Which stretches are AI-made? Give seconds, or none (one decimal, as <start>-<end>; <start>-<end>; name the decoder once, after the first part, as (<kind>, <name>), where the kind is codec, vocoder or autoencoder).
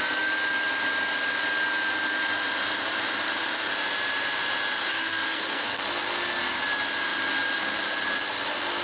4.9-5.8 (codec, SNAC)